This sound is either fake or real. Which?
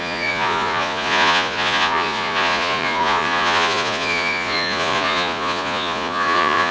fake